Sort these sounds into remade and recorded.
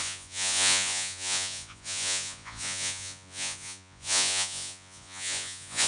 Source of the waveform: remade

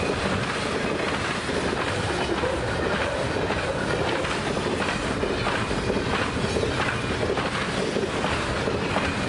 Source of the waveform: recorded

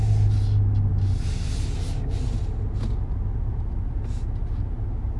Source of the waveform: recorded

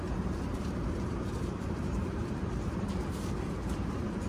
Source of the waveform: remade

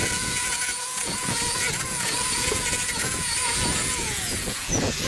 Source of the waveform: remade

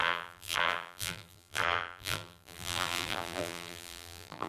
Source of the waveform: remade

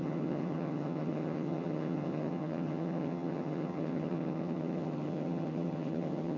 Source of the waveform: remade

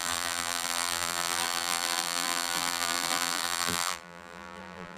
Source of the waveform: remade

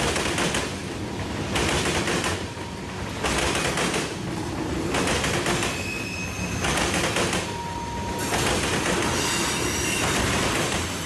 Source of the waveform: recorded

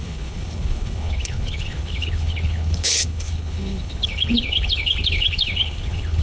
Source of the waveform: remade